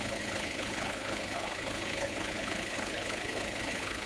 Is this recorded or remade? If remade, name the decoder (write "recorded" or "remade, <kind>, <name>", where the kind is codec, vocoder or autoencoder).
remade, codec, HILCodec